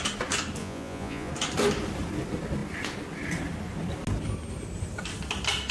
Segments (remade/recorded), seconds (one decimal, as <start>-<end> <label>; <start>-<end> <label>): 0.0-0.6 recorded; 0.6-1.3 remade; 1.3-5.7 recorded